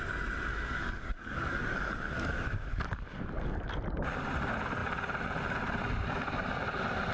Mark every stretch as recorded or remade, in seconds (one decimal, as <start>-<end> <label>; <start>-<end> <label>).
0.0-0.5 recorded; 0.5-3.7 remade; 3.7-7.1 recorded